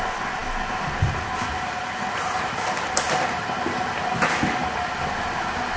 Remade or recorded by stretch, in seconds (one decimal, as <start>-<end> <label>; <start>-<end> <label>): 0.0-5.8 recorded